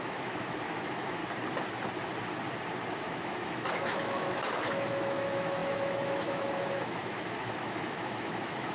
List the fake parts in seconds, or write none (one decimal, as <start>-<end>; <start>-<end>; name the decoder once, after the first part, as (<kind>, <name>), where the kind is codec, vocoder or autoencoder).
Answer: 0.0-1.2 (autoencoder, DAC-VAE); 3.0-8.7